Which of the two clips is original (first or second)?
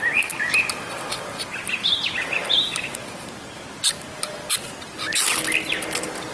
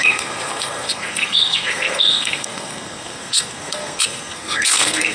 first